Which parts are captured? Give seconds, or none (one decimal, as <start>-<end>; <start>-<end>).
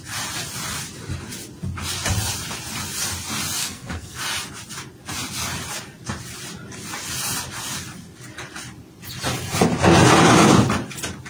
0.0-3.6; 4.2-11.3